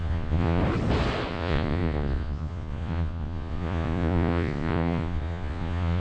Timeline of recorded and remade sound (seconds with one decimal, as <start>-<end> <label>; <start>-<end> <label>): 0.0-0.6 remade; 0.6-1.3 recorded; 1.3-6.0 remade